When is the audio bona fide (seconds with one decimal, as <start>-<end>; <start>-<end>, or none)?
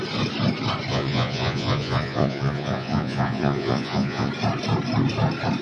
0.0-0.9; 4.3-5.6